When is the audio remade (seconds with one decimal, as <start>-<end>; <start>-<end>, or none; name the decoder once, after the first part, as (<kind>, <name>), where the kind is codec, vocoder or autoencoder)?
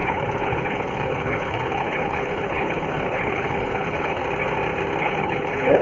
0.0-4.2 (codec, HILCodec); 5.0-5.8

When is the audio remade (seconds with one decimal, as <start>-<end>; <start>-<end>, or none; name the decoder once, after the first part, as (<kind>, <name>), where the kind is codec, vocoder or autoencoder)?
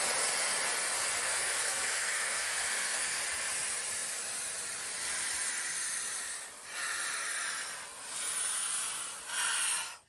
1.2-3.2 (codec, SNAC)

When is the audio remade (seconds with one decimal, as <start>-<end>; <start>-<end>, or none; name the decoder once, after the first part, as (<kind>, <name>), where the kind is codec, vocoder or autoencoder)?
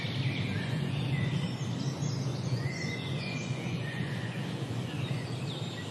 0.5-1.4 (vocoder, Vocos); 2.3-5.3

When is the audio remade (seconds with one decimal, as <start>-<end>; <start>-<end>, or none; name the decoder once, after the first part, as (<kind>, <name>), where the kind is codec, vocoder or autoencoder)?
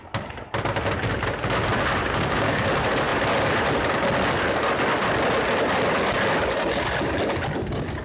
2.0-2.7 (codec, DAC)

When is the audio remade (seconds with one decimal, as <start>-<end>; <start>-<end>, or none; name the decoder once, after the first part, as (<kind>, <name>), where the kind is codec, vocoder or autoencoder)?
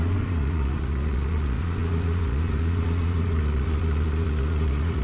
0.0-5.0 (vocoder, Vocos)